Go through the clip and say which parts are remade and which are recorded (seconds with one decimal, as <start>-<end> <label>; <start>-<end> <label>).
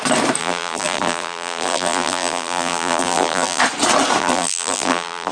0.0-0.4 recorded; 0.4-3.6 remade; 3.6-4.2 recorded; 4.2-5.3 remade